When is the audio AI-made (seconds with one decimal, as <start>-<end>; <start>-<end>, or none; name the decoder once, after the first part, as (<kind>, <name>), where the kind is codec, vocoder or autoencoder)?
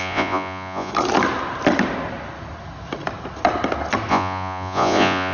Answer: 0.0-0.9 (vocoder, Vocos); 4.1-5.3